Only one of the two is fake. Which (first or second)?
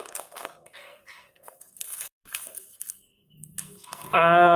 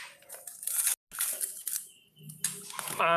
first